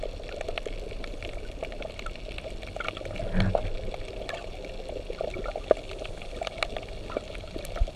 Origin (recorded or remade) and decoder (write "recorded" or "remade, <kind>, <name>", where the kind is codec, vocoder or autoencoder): recorded